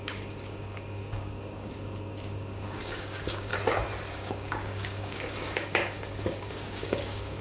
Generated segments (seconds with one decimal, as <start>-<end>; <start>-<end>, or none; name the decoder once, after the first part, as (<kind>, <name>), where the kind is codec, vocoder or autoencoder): 0.0-3.5 (codec, DAC); 4.1-7.4